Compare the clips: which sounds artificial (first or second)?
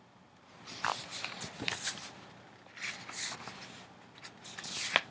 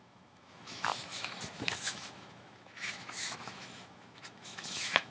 second